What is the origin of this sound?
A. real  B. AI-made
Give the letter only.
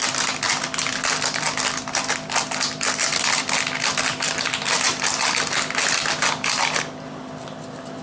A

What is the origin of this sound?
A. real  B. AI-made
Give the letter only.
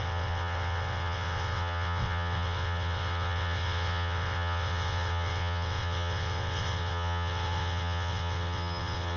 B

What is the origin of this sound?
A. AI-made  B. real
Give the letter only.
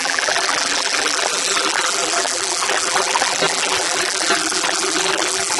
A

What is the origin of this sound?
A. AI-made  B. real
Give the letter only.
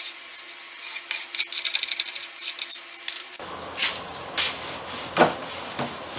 B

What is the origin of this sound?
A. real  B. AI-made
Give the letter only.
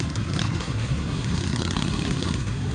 B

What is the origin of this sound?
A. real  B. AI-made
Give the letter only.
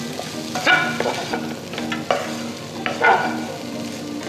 A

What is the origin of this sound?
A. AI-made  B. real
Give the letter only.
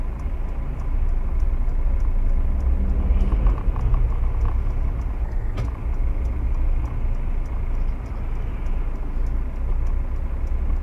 B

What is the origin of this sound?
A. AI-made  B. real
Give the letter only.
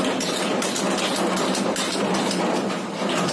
B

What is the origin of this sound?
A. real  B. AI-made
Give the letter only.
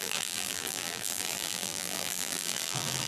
B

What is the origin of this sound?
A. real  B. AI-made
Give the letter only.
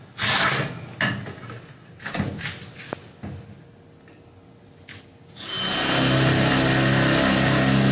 A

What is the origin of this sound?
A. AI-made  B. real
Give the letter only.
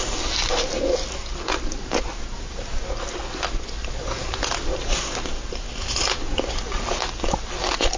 B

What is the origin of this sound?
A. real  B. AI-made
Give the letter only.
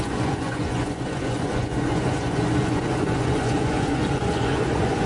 B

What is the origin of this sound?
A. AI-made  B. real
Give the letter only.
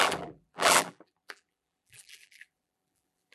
A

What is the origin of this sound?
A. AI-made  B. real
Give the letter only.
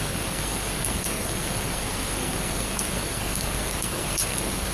A